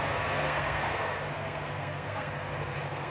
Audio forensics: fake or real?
fake